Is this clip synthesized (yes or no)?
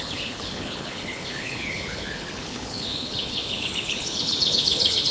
yes